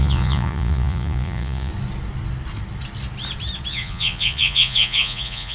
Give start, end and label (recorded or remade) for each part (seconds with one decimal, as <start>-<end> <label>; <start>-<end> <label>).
0.0-1.7 remade; 1.7-3.7 recorded; 3.7-5.5 remade